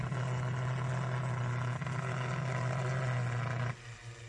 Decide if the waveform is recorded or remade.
recorded